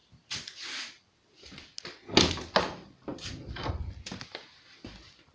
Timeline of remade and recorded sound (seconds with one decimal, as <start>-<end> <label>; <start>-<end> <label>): 0.0-5.3 recorded